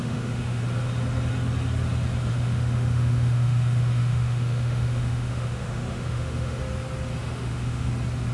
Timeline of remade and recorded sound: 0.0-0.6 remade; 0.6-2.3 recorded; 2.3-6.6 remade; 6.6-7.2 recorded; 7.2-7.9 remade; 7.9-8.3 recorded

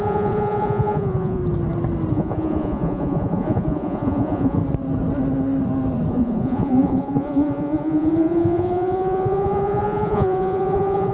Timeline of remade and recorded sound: 0.0-1.4 remade; 1.4-2.1 recorded; 2.1-4.6 remade; 4.6-6.1 recorded; 6.1-11.1 remade